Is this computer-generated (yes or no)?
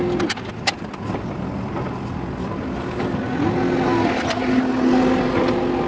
no